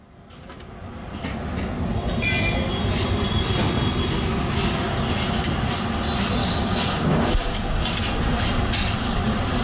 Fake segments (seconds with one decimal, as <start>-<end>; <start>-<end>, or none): 6.4-7.8